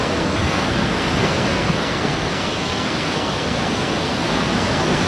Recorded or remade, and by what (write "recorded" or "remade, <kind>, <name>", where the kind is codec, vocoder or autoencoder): remade, codec, SNAC